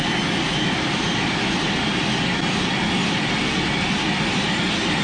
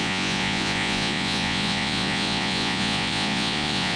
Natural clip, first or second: first